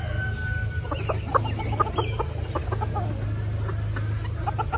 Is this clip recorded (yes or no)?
yes